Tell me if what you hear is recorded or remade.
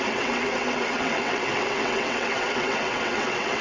remade